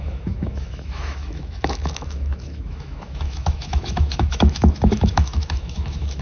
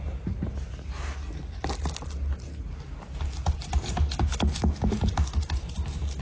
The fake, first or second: first